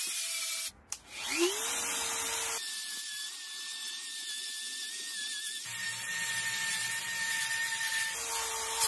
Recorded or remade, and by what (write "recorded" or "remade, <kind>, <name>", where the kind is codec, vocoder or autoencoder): recorded